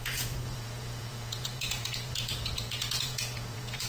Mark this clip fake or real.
fake